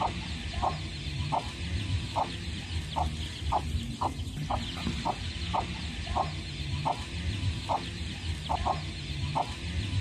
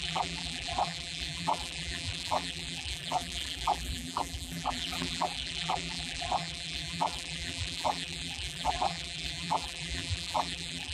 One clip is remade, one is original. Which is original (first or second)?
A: first